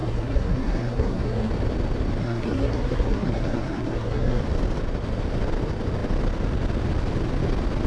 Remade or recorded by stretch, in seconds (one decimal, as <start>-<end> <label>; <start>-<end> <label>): 0.0-1.5 remade; 1.5-2.2 recorded; 2.2-4.4 remade; 4.4-7.9 recorded